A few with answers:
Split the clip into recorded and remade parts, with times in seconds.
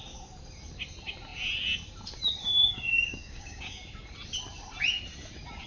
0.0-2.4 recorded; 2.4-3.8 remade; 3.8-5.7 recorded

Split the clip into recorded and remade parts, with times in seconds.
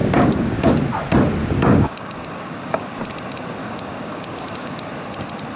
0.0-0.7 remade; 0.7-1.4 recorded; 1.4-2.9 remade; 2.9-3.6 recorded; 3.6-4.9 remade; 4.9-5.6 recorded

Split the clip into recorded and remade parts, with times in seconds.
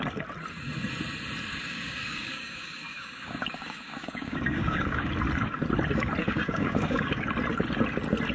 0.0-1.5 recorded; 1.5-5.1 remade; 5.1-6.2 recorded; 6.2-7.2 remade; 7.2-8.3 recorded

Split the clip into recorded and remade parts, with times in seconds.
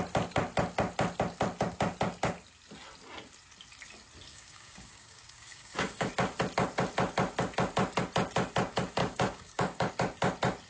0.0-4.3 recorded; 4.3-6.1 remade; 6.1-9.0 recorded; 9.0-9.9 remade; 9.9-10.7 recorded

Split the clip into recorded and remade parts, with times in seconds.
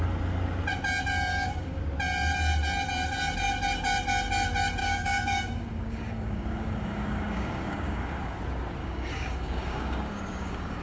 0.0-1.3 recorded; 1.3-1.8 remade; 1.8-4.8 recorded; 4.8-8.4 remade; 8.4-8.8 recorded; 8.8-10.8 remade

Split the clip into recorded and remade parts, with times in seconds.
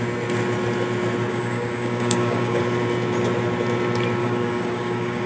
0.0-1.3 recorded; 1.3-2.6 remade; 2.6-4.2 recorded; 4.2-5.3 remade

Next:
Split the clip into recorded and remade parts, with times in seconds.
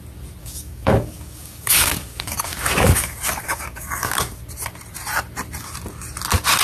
0.0-0.4 recorded; 0.4-4.4 remade; 4.4-6.6 recorded